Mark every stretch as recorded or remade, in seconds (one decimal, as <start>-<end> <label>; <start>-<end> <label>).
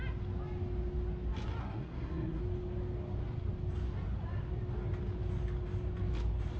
0.0-1.6 recorded; 1.6-2.4 remade; 2.4-6.6 recorded